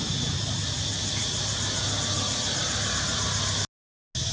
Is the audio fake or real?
real